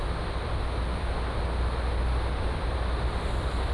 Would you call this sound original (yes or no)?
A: yes